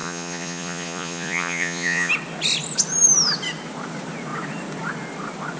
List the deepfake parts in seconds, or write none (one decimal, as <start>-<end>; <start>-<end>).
0.0-2.1

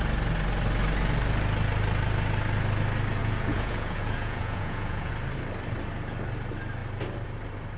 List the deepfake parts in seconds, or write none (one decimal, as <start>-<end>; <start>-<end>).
3.2-5.1

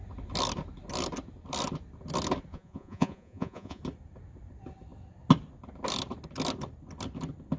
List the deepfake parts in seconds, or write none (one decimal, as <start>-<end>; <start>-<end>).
2.5-3.8

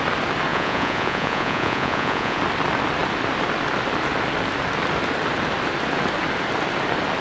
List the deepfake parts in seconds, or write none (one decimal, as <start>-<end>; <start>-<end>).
0.5-2.4